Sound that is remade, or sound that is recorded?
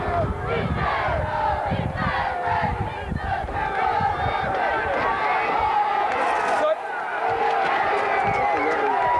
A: recorded